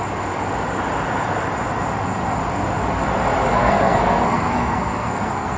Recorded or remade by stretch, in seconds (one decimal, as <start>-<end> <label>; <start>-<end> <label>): 0.0-3.5 recorded; 3.5-5.6 remade